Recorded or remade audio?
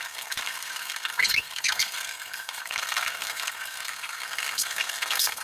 remade